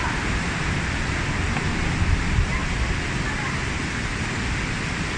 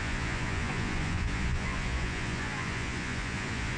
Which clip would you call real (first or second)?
first